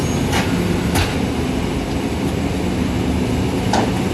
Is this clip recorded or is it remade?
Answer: recorded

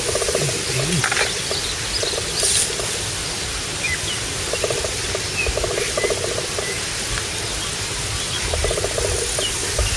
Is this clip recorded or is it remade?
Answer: recorded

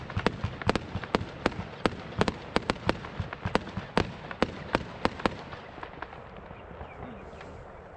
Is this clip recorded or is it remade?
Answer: recorded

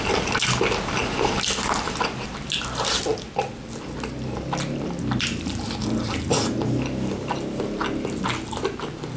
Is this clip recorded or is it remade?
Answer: recorded